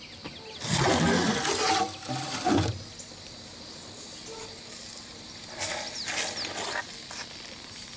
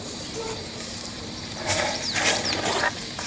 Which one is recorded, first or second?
first